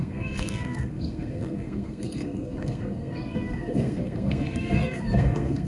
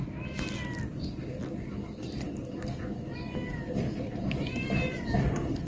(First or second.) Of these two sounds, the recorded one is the second